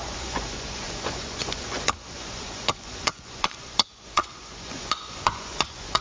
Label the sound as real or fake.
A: fake